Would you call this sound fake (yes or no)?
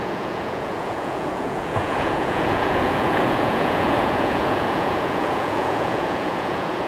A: yes